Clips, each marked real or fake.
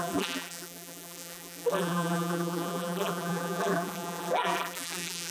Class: fake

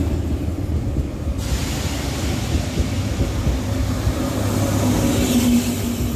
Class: real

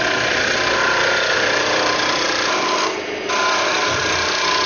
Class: fake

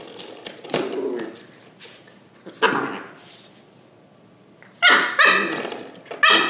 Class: real